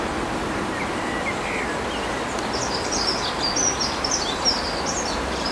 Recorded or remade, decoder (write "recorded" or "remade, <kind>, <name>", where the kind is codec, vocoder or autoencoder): recorded